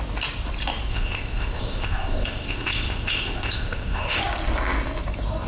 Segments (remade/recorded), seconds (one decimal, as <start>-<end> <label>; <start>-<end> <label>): 0.0-0.9 recorded; 0.9-4.2 remade; 4.2-5.5 recorded